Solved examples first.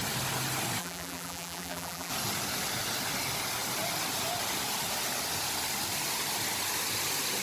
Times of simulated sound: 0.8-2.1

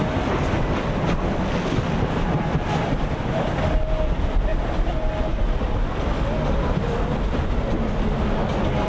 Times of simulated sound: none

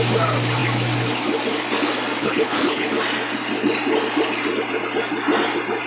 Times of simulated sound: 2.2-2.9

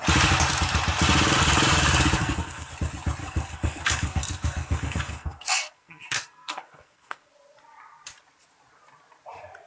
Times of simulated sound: 2.2-2.7; 3.2-7.3

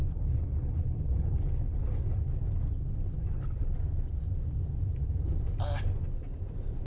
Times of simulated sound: 0.0-2.2; 3.2-3.7